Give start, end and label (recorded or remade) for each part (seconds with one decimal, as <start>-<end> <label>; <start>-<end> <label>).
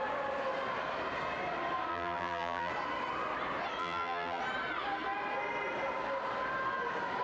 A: 0.0-1.9 recorded; 1.9-2.7 remade; 2.7-3.8 recorded; 3.8-4.4 remade; 4.4-7.2 recorded